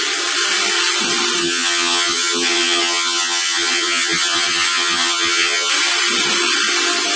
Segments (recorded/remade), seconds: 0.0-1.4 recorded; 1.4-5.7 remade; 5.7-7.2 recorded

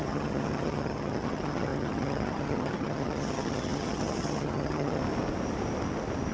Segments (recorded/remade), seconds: 0.0-5.0 remade; 5.0-6.3 recorded